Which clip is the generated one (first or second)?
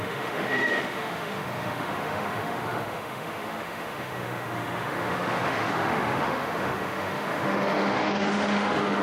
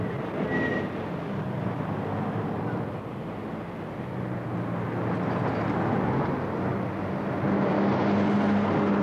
first